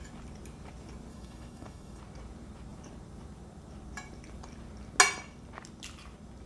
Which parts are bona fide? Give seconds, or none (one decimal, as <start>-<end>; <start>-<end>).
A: 0.0-1.1; 2.0-6.5

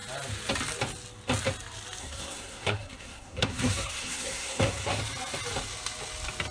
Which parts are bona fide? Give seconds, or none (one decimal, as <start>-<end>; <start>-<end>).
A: 0.0-2.0; 5.0-6.5